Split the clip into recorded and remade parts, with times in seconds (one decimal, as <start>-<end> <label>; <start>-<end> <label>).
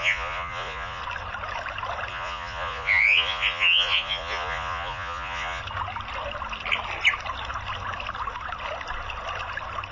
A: 0.0-1.0 remade; 1.0-2.1 recorded; 2.1-5.6 remade; 5.6-9.9 recorded